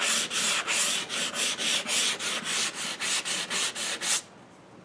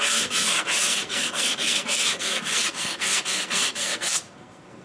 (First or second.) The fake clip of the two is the second